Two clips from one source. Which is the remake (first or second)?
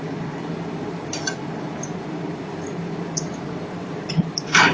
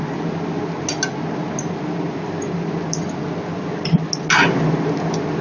first